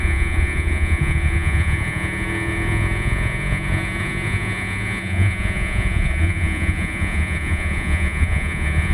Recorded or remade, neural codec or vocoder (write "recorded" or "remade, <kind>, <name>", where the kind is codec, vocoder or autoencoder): remade, vocoder, Vocos